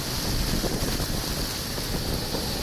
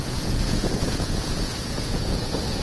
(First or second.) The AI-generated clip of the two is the second